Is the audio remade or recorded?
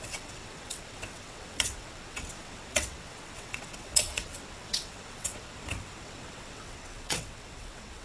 remade